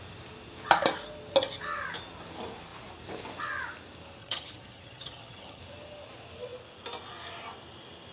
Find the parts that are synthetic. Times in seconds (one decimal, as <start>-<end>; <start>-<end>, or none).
4.2-5.6